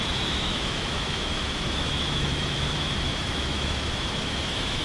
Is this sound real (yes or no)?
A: no